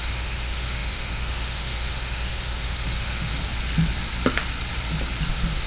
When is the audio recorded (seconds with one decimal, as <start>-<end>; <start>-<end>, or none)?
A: 3.3-5.3